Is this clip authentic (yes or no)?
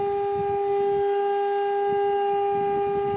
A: yes